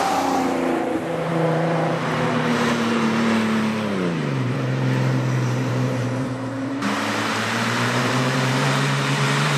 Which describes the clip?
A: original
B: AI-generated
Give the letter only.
B